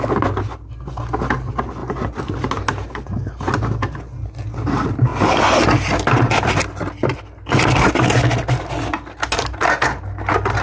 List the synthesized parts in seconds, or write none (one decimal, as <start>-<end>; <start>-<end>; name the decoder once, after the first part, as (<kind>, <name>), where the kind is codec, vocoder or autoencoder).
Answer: none